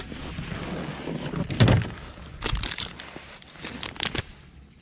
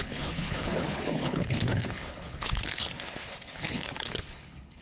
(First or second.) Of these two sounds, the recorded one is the first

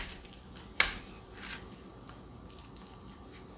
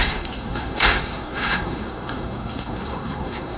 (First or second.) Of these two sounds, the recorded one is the first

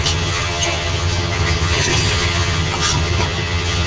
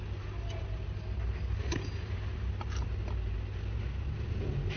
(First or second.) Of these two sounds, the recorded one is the second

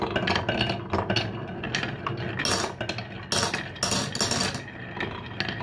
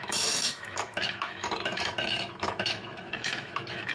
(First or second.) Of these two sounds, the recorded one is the first